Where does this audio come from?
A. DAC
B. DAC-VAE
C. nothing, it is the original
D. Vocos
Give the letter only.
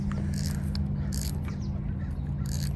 C